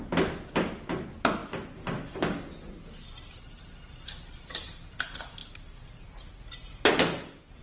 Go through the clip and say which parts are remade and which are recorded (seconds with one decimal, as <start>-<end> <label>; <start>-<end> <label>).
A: 0.0-7.6 recorded